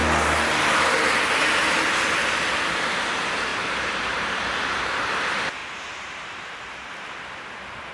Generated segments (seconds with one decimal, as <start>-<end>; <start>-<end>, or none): 3.5-5.1; 5.6-6.9